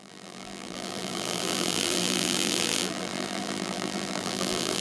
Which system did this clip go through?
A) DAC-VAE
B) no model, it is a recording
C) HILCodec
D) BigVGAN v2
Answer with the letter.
D